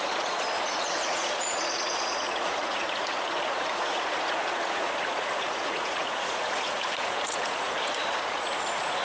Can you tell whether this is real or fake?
fake